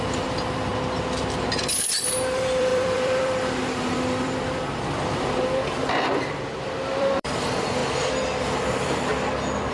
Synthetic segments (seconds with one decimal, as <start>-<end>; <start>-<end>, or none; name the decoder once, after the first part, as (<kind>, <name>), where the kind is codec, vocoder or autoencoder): 0.0-0.7 (vocoder, BigVGAN v2); 1.7-7.8; 8.4-9.1